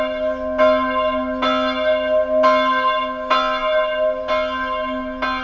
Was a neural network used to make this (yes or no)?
no